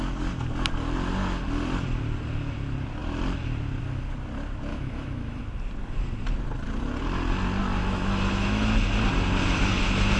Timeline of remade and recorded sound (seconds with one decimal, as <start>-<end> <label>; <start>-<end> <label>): 0.0-4.7 recorded; 4.7-5.4 remade; 5.4-7.8 recorded; 7.8-8.7 remade; 8.7-10.2 recorded